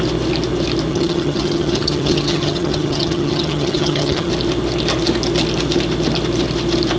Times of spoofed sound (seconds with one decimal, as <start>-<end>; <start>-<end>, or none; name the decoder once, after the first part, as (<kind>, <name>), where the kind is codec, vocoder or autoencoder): 0.9-4.3 (vocoder, HiFi-GAN)